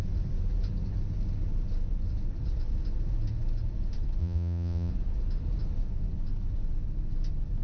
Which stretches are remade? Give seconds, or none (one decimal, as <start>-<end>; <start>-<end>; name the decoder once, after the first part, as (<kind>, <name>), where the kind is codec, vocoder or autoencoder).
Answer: 4.2-4.9 (vocoder, Vocos)